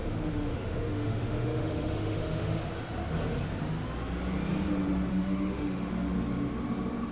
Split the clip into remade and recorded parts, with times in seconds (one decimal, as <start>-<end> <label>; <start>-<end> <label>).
0.0-2.6 remade; 2.6-5.1 recorded; 5.1-5.9 remade; 5.9-7.1 recorded